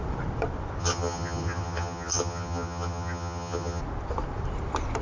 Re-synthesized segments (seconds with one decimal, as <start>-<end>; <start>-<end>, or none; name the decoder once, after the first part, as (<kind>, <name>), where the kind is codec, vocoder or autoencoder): 0.8-3.8 (vocoder, HiFi-GAN)